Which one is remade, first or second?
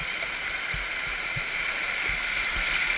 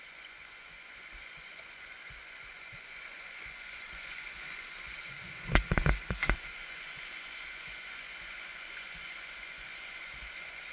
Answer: second